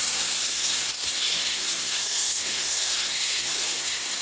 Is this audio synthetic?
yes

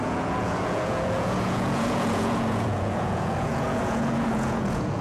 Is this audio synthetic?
yes